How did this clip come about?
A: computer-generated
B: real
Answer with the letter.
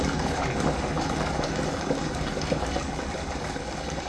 A